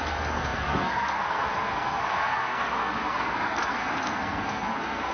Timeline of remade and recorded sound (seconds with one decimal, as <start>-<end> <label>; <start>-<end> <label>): 0.0-5.1 remade